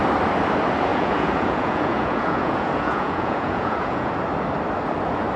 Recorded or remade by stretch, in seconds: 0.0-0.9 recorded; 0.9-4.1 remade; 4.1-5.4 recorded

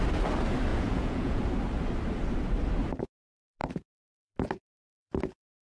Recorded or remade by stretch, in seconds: 0.0-0.7 recorded; 0.7-1.4 remade; 1.4-5.6 recorded

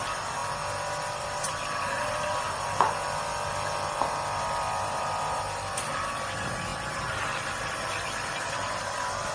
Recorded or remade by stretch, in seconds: 0.0-9.3 recorded

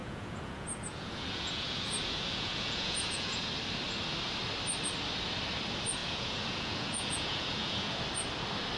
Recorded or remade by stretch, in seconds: 0.0-3.5 remade; 3.5-6.0 recorded; 6.0-8.0 remade; 8.0-8.8 recorded

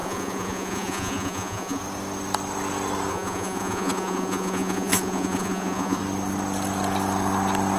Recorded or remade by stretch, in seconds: 0.0-1.8 remade; 1.8-3.1 recorded; 3.1-6.0 remade; 6.0-7.8 recorded

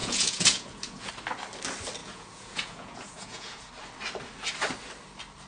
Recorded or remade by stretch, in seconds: 0.0-1.1 remade; 1.1-2.0 recorded; 2.0-3.7 remade; 3.7-5.5 recorded